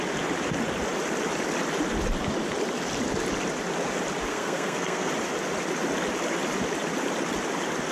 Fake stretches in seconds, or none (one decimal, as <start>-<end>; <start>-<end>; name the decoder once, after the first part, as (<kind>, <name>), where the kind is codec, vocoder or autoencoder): 4.3-5.1 (codec, SNAC)